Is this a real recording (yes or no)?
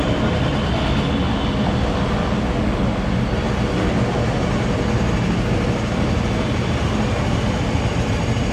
yes